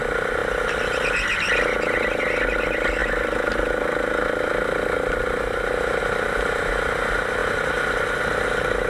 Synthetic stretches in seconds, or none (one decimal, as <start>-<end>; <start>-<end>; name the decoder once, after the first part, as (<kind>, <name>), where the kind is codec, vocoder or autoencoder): none